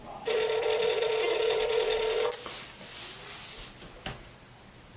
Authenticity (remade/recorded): recorded